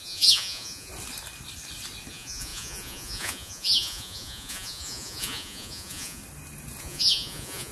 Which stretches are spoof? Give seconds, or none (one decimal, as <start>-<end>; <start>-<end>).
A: 0.0-0.9; 2.1-6.2; 6.8-7.7